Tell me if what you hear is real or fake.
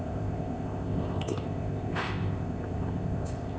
fake